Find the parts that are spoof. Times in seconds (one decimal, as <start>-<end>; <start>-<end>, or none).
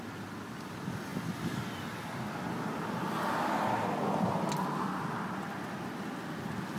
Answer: none